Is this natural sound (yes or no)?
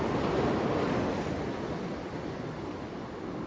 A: yes